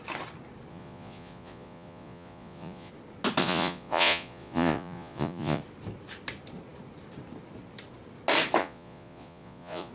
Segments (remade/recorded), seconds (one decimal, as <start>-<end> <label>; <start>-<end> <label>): 0.0-0.7 recorded; 0.7-2.9 remade; 2.9-3.4 recorded; 3.4-5.6 remade; 5.6-8.6 recorded; 8.6-9.9 remade